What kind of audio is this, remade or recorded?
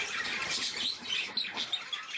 recorded